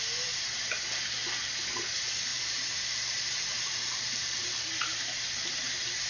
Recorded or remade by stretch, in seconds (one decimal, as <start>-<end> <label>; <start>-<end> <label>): 0.0-2.3 recorded; 2.3-6.1 remade